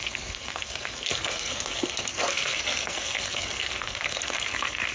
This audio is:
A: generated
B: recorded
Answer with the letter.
A